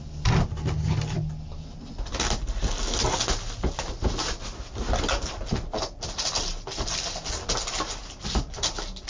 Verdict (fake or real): real